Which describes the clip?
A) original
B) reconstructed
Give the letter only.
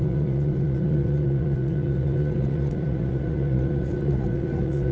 B